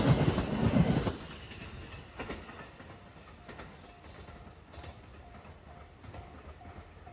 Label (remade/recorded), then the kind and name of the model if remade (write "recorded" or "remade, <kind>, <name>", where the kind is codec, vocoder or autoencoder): recorded